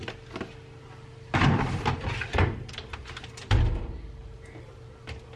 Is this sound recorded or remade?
remade